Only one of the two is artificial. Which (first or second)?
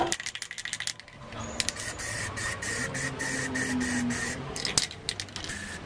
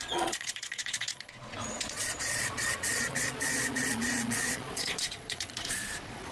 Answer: second